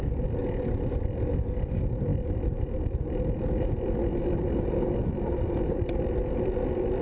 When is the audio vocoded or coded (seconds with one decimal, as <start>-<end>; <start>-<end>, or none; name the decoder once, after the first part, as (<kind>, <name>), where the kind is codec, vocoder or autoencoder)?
2.1-2.6 (vocoder, BigVGAN v2); 5.0-6.2